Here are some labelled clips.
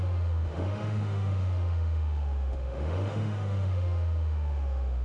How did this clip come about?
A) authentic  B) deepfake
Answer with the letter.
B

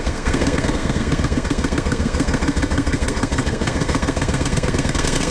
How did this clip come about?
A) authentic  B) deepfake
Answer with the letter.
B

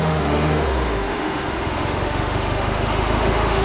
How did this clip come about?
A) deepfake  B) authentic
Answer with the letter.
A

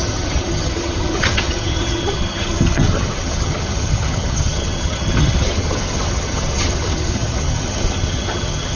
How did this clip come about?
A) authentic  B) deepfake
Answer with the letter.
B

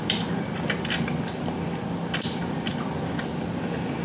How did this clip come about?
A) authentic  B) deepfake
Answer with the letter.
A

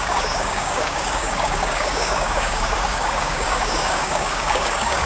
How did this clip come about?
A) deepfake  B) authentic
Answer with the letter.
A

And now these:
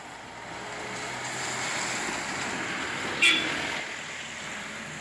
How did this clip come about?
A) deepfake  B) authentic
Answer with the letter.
B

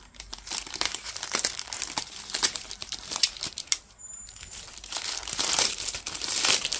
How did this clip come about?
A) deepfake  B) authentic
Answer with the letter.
A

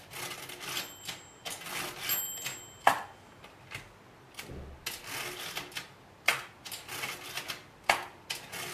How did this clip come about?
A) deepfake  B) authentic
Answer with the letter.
B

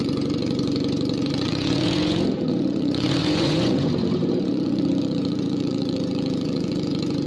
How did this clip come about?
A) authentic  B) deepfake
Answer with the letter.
B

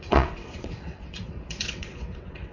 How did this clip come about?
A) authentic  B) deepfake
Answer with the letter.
B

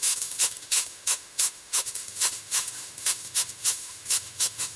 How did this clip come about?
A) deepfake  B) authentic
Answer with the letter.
A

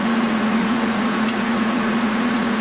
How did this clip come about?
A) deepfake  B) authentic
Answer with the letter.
A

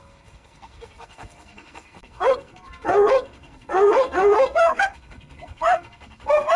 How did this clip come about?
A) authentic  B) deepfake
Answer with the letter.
B